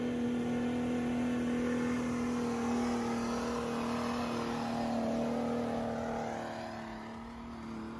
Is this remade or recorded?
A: recorded